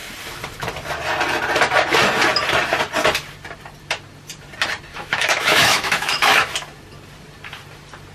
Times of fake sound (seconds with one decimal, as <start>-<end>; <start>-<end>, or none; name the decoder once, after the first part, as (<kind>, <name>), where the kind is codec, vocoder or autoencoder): 4.9-6.5 (autoencoder, DAC-VAE)